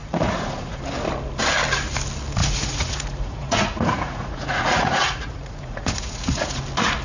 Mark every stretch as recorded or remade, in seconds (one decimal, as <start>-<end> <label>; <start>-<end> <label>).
0.0-0.8 remade; 0.8-2.4 recorded; 2.4-6.6 remade; 6.6-7.0 recorded